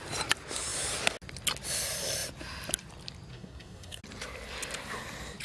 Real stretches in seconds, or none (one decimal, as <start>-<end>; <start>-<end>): 0.0-3.3; 4.0-5.4